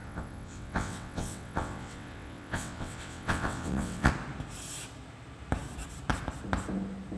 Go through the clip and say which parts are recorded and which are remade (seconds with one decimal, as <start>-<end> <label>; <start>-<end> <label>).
0.0-4.1 remade; 4.1-7.2 recorded